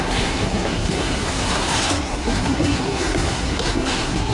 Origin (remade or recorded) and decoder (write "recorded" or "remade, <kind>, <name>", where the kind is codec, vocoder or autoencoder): remade, codec, SNAC